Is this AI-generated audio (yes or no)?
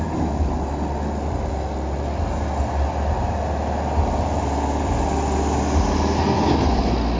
no